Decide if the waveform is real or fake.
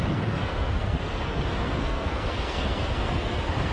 fake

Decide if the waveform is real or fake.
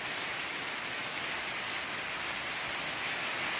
real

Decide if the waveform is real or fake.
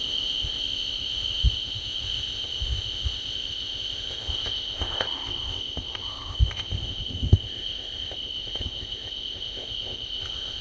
fake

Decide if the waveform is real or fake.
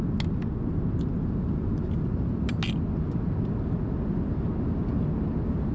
real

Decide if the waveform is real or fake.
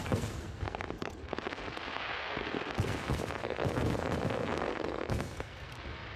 fake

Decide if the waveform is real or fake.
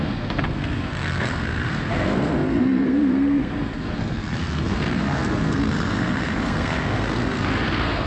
fake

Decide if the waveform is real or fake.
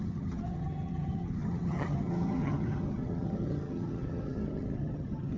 fake